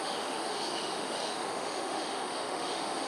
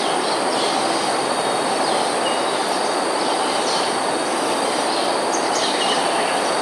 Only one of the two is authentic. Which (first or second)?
second